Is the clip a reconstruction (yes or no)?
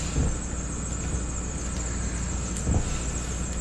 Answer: no